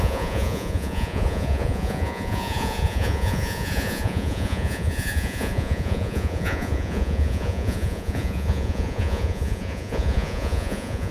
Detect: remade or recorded remade